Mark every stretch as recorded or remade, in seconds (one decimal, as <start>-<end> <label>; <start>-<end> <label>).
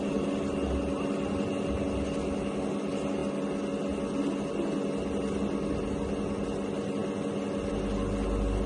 0.0-8.7 recorded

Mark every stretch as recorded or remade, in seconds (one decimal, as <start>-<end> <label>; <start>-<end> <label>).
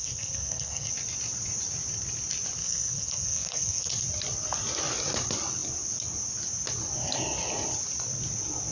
0.0-0.9 remade; 0.9-2.6 recorded; 2.6-3.9 remade; 3.9-8.7 recorded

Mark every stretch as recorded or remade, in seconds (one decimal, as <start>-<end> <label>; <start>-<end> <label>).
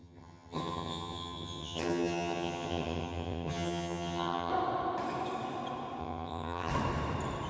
0.0-4.5 remade; 4.5-6.0 recorded; 6.0-6.7 remade; 6.7-7.5 recorded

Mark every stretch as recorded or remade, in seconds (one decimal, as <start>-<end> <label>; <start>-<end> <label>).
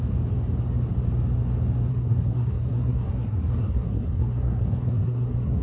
0.0-1.9 recorded; 1.9-5.6 remade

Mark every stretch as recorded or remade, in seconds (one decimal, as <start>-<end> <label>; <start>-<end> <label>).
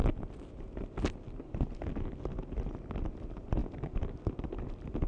0.0-5.1 recorded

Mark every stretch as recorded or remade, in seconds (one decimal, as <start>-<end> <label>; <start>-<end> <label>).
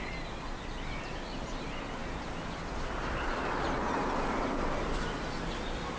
0.0-6.0 recorded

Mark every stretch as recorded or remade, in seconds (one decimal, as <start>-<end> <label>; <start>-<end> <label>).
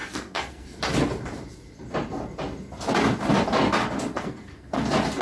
0.0-0.8 remade; 0.8-4.1 recorded; 4.1-4.8 remade; 4.8-5.2 recorded